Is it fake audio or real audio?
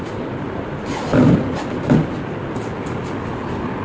real